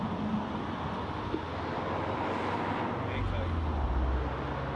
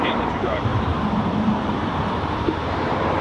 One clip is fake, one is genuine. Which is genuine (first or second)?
first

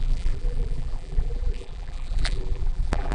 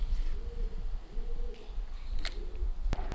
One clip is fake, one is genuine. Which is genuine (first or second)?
second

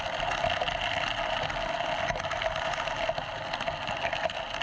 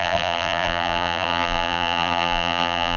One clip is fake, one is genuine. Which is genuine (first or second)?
first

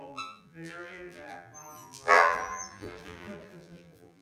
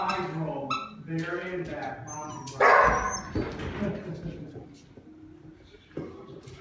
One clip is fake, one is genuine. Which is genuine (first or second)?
second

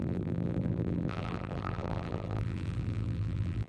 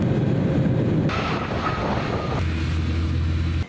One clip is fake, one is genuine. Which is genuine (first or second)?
second